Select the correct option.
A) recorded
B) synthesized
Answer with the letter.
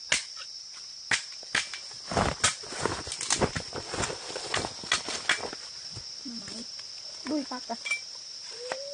A